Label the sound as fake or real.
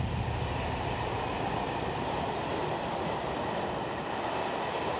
real